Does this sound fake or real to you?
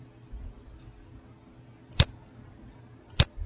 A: real